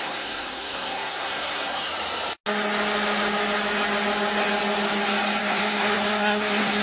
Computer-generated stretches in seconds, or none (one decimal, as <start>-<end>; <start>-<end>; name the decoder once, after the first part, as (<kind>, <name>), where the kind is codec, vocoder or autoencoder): 0.0-1.9 (codec, SNAC); 5.4-6.8